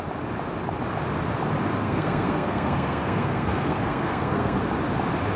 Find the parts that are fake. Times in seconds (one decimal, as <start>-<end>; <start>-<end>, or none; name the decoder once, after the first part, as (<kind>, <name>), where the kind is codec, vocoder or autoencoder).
1.8-4.6 (codec, SNAC)